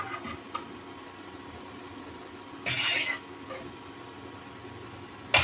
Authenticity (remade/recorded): recorded